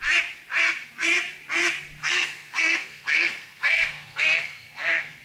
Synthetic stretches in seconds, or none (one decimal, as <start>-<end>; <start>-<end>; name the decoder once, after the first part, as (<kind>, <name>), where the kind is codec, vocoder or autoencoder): 2.0-5.2 (codec, SNAC)